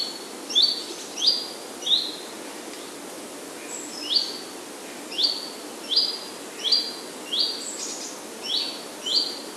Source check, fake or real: real